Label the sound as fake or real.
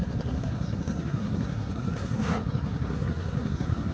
fake